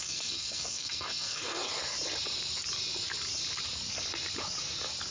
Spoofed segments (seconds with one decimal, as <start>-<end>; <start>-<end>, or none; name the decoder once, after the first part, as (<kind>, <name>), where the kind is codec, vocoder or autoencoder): 0.0-1.6 (codec, SNAC)